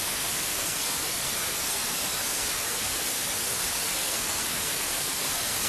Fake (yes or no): yes